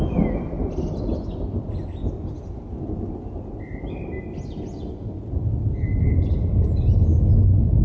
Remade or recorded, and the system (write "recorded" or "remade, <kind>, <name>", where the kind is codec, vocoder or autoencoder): recorded